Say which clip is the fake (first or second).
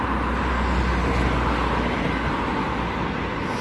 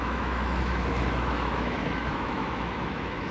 second